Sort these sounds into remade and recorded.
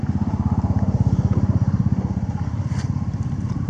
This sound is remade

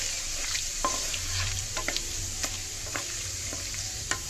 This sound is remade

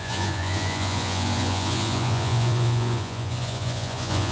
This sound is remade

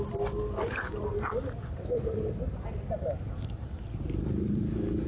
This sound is remade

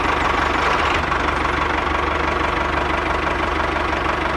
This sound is recorded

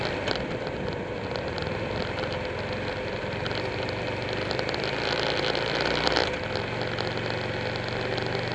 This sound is recorded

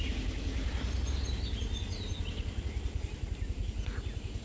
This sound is recorded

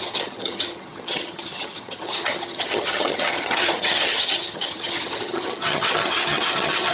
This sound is remade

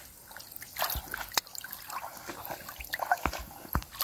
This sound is recorded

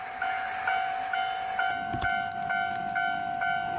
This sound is recorded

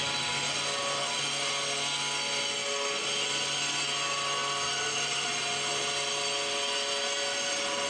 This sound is recorded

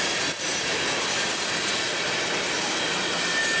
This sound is recorded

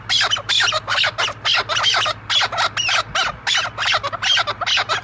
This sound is recorded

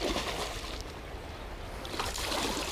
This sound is recorded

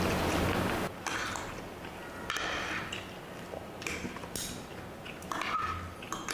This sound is recorded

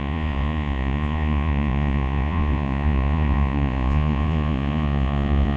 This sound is remade